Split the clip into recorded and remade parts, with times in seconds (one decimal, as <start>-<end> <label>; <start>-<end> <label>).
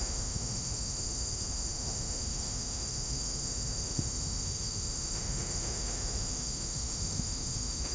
0.0-7.9 remade